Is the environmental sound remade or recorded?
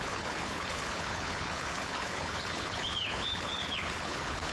remade